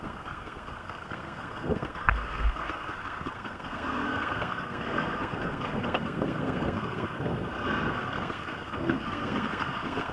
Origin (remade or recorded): remade